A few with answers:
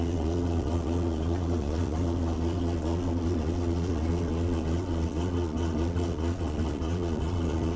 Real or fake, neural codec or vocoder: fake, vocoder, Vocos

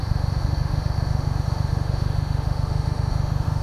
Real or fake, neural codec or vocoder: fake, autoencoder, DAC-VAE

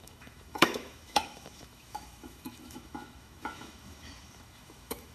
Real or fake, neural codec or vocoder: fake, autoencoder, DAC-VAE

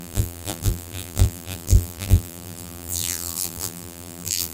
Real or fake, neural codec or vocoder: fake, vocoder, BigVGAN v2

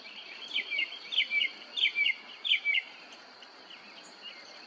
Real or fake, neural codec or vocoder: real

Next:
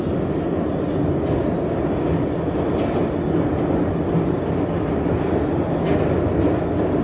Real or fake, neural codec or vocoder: real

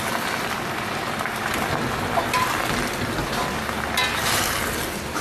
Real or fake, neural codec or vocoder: real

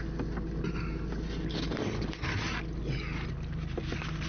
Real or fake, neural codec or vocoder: real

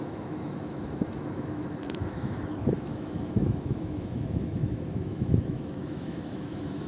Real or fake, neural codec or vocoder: fake, autoencoder, DAC-VAE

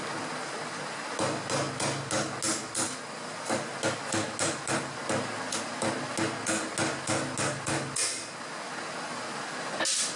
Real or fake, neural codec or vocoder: real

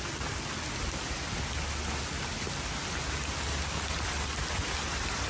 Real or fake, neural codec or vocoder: real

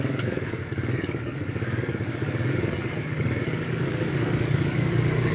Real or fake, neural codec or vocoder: fake, codec, DAC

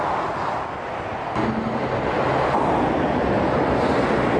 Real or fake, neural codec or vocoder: real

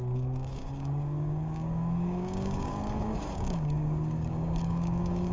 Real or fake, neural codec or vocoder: fake, codec, DAC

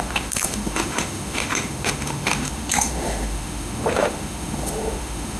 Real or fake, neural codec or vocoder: fake, autoencoder, DAC-VAE